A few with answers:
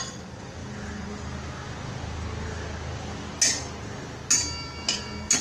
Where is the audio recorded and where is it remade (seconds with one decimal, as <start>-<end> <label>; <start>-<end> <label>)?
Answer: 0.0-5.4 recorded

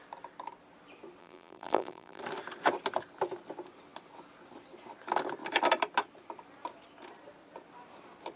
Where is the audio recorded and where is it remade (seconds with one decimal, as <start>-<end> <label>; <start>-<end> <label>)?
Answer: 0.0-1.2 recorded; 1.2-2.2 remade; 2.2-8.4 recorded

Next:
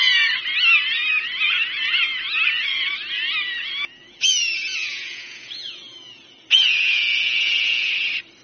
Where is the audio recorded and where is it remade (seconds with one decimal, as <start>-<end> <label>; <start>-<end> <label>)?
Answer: 0.0-4.0 recorded; 4.0-7.9 remade; 7.9-8.4 recorded

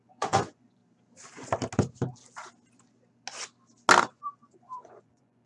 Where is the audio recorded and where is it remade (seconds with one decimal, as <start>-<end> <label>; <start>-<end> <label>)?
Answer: 0.0-0.8 remade; 0.8-4.0 recorded; 4.0-5.5 remade

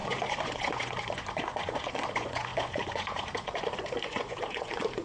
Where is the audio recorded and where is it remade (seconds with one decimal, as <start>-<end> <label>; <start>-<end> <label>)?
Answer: 0.0-5.0 remade

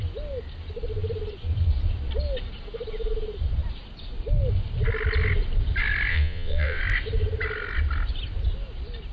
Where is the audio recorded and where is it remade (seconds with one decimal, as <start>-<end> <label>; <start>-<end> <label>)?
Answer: 0.0-6.1 recorded; 6.1-6.8 remade; 6.8-9.1 recorded